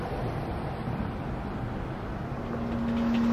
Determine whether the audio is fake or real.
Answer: real